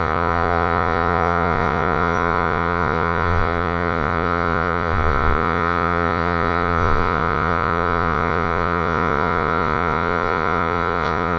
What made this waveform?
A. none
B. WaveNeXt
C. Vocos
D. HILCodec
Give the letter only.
C